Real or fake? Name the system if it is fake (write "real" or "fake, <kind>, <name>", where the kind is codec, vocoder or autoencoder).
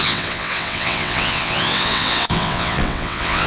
fake, vocoder, WaveNeXt